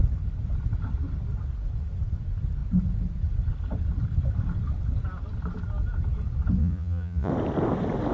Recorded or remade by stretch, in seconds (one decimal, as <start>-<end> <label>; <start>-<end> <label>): 0.0-6.6 recorded; 6.6-7.3 remade; 7.3-8.1 recorded